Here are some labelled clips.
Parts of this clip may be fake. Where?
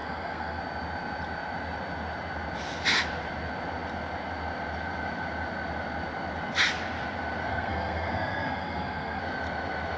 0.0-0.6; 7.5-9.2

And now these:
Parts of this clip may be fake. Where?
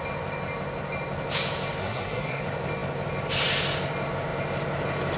1.8-2.4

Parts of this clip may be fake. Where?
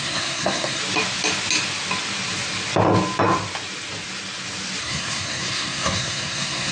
0.0-0.8; 4.8-6.7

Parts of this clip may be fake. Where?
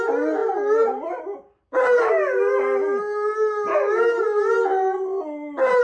none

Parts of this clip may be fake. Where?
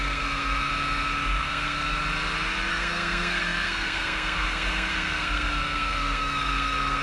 0.0-0.7; 1.4-1.8; 2.7-7.0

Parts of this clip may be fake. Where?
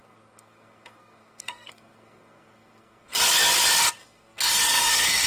0.0-3.2; 4.0-5.3